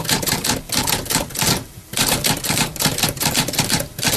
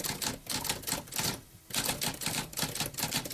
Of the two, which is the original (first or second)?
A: second